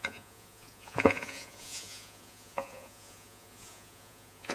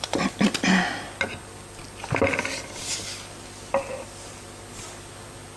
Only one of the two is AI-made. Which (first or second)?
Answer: first